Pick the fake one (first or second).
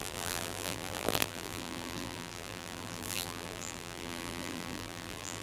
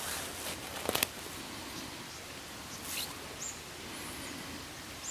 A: first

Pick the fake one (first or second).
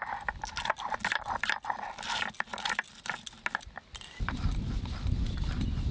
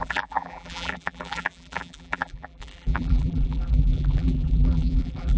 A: second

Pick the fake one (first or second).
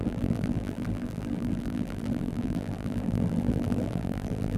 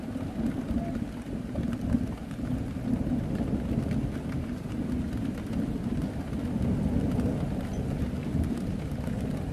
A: first